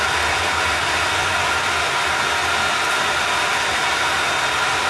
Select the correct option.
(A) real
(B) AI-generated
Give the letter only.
A